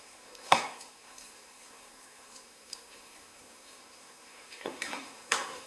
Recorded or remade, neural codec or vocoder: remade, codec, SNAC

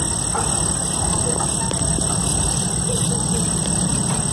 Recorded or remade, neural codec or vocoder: recorded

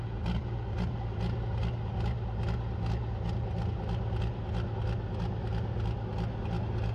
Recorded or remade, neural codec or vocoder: recorded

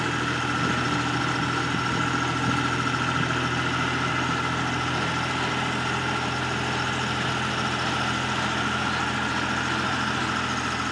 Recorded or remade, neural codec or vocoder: recorded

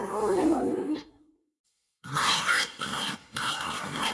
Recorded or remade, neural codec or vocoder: remade, codec, SNAC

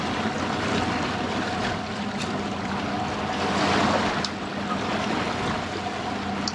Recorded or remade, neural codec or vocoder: recorded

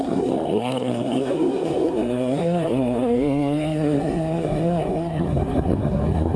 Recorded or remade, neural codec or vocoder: remade, codec, SNAC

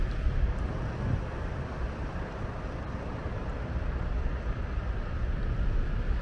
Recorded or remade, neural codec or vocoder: recorded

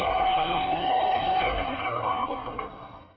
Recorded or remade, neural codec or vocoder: remade, codec, SNAC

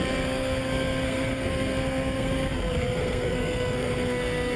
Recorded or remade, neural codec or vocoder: remade, codec, SNAC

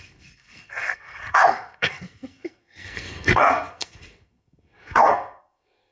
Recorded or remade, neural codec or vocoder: remade, codec, SNAC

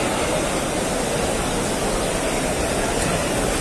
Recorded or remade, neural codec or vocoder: recorded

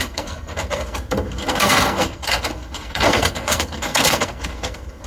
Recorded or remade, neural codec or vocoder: remade, codec, SNAC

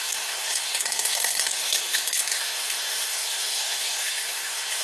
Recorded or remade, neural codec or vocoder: remade, codec, SNAC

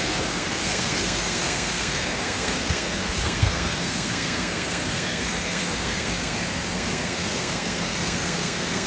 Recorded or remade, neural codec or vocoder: remade, codec, SNAC